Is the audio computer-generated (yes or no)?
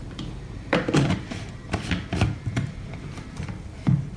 yes